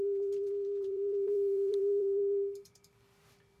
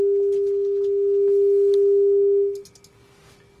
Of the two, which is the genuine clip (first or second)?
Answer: second